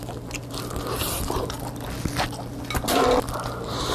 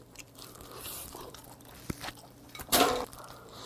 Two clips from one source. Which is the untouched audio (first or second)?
first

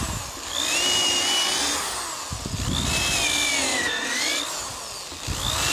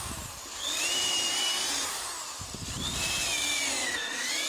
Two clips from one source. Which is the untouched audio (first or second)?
first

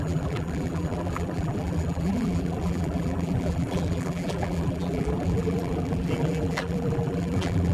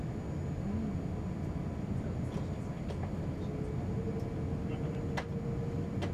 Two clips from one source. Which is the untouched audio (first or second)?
second